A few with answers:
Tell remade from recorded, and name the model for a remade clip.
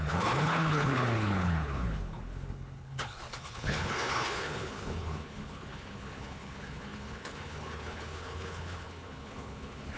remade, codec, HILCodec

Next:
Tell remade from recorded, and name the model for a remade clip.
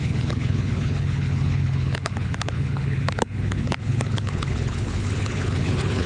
remade, codec, HILCodec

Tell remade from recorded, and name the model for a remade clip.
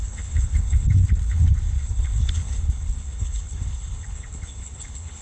remade, codec, HILCodec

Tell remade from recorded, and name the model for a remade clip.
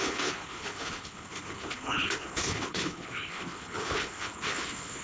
remade, codec, HILCodec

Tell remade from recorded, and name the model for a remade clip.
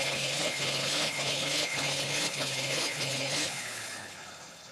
remade, codec, HILCodec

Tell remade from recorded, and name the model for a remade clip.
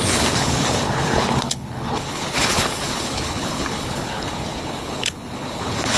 remade, codec, HILCodec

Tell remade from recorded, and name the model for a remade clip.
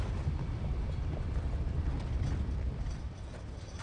recorded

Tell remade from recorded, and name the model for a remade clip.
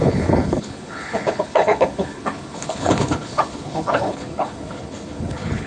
remade, codec, HILCodec